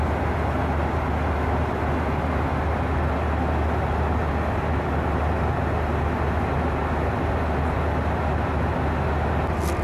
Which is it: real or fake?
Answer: real